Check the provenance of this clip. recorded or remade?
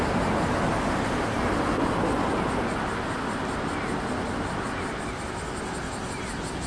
recorded